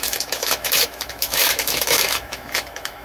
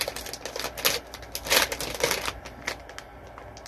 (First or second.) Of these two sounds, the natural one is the second